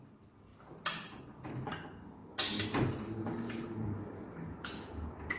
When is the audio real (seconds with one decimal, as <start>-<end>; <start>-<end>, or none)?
0.0-5.4